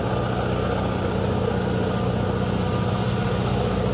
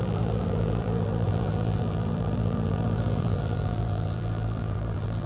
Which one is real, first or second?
first